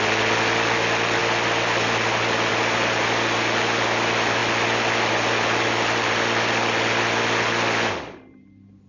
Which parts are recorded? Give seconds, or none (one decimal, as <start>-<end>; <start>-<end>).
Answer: 0.0-8.9